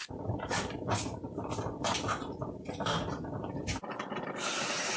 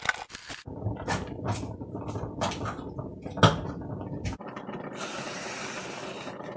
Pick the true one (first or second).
second